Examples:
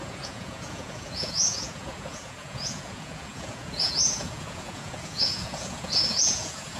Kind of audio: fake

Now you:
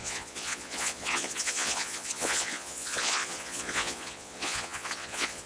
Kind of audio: fake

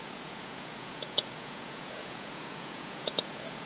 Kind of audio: fake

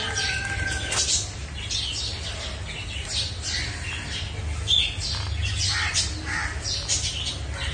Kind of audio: real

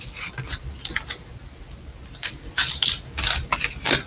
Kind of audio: real